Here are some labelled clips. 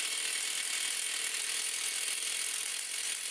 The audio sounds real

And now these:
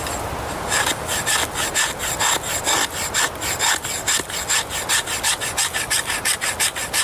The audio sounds real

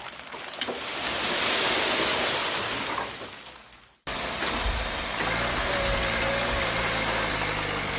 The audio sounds real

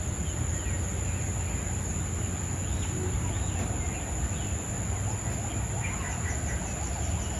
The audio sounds real